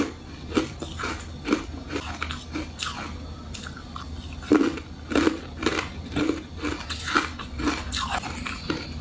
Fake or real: real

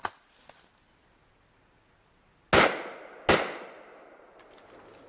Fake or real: real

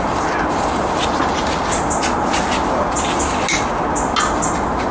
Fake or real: real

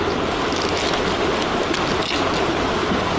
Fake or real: real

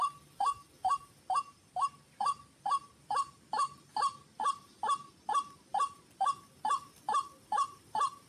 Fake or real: fake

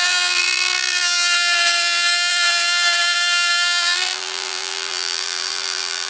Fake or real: fake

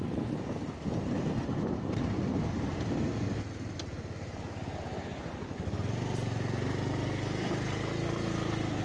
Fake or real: real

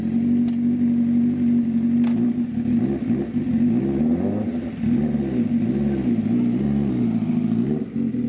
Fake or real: real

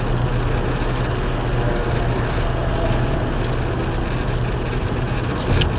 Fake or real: real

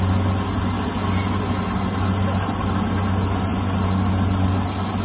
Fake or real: real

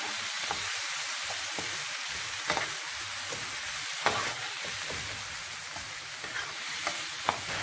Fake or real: real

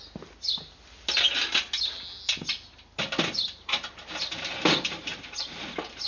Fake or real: real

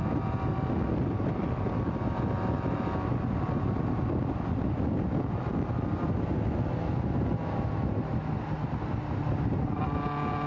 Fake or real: real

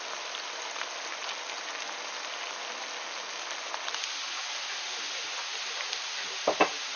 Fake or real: real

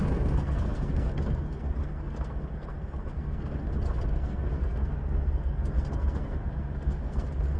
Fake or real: fake